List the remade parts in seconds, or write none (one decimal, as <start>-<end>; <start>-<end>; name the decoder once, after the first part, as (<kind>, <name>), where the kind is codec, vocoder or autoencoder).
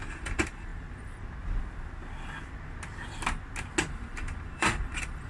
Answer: 0.0-0.7 (vocoder, BigVGAN v2); 3.9-5.3